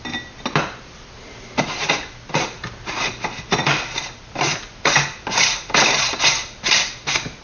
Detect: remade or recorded recorded